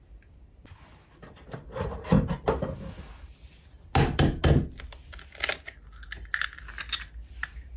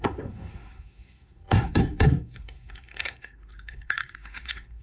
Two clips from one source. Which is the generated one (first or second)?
second